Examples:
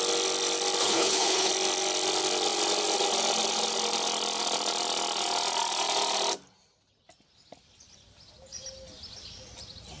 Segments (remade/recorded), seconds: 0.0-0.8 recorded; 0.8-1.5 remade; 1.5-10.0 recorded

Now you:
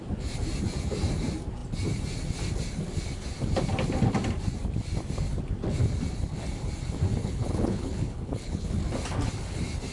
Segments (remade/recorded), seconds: 0.0-7.2 recorded; 7.2-8.7 remade; 8.7-9.9 recorded

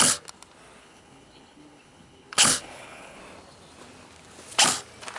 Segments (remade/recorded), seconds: 0.0-0.8 recorded; 0.8-3.2 remade; 3.2-5.2 recorded

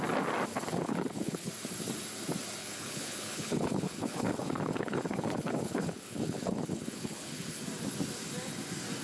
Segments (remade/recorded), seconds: 0.0-0.5 recorded; 0.5-1.5 remade; 1.5-2.6 recorded; 2.6-7.6 remade; 7.6-9.0 recorded